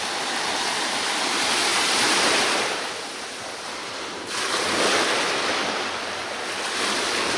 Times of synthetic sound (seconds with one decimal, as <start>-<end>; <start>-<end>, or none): 1.7-3.9